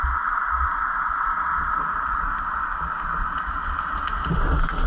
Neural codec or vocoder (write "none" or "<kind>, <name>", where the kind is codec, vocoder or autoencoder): none